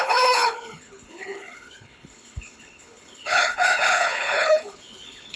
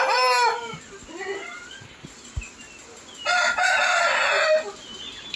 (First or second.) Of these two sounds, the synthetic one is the first